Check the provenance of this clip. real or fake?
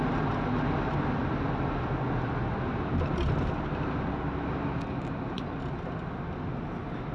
real